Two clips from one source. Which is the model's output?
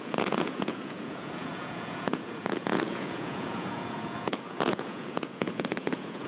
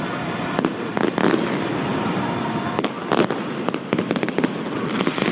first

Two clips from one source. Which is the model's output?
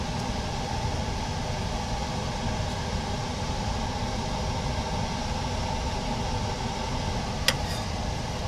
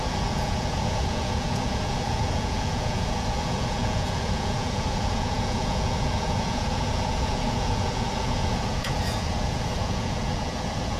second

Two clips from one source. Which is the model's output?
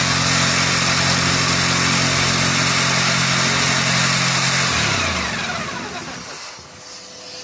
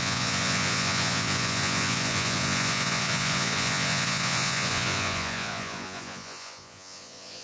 second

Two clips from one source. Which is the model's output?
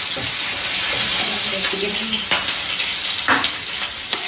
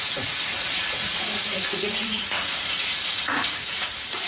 second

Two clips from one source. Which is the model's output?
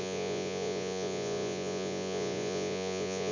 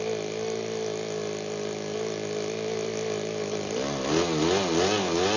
first